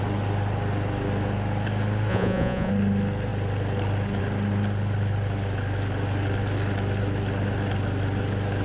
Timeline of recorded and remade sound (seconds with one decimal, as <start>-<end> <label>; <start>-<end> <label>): 0.0-2.1 recorded; 2.1-2.7 remade; 2.7-8.6 recorded